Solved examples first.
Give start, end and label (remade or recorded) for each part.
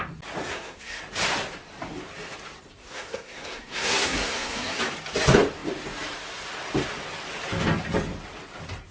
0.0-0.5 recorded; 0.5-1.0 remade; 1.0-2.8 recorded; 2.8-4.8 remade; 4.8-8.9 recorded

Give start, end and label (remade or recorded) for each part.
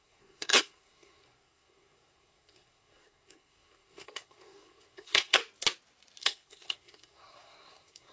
0.0-5.4 remade; 5.4-6.2 recorded; 6.2-8.1 remade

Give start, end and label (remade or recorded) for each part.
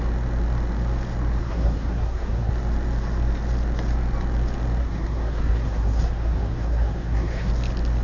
0.0-1.4 recorded; 1.4-2.5 remade; 2.5-4.8 recorded; 4.8-7.5 remade; 7.5-8.0 recorded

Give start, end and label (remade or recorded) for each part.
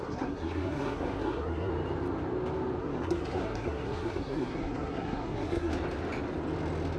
0.0-1.7 remade; 1.7-2.8 recorded; 2.8-5.7 remade; 5.7-7.0 recorded